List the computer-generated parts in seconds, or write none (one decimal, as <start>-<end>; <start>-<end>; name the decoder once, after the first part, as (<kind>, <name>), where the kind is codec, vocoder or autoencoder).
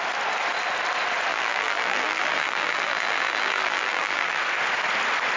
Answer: 1.3-4.4 (vocoder, BigVGAN v2)